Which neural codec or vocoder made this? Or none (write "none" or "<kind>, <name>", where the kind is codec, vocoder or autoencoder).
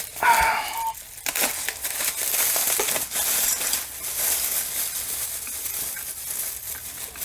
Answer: none